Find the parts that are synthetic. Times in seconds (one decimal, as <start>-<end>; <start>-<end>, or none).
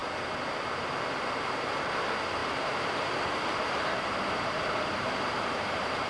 2.4-6.1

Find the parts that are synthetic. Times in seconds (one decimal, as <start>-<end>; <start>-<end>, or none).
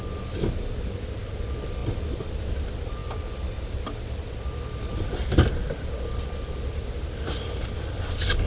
none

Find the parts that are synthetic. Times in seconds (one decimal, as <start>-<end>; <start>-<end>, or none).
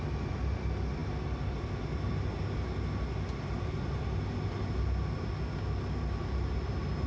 none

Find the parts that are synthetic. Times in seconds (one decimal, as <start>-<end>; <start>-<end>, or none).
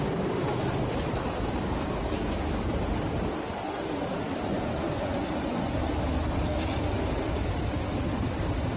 4.5-5.8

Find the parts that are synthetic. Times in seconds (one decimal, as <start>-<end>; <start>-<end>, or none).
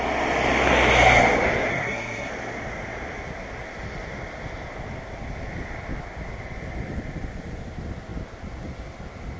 1.7-2.3